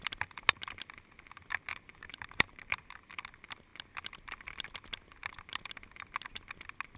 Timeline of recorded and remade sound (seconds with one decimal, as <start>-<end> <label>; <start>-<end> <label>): 0.0-1.7 recorded; 1.7-3.0 remade; 3.0-7.0 recorded